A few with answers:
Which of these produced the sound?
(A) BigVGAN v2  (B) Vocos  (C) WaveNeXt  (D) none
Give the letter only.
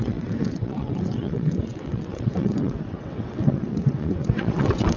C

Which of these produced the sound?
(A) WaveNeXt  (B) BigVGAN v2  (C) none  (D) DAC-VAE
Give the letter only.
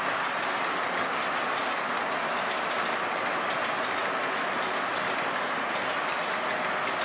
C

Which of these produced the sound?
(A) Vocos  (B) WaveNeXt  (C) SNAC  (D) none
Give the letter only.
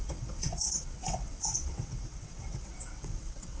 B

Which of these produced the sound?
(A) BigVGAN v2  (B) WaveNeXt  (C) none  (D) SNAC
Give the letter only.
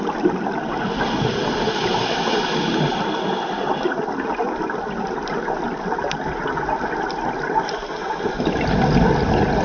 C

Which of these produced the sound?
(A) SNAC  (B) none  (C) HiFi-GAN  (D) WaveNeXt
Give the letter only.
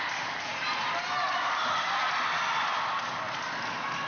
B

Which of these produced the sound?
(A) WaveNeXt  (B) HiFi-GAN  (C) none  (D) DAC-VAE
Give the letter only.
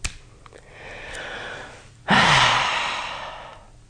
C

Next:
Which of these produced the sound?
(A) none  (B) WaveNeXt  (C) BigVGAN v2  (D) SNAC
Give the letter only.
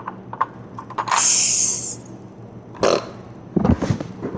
A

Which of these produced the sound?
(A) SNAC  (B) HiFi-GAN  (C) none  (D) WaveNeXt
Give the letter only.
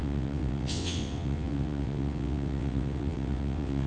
D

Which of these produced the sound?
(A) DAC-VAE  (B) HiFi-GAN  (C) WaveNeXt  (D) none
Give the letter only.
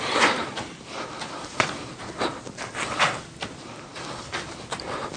D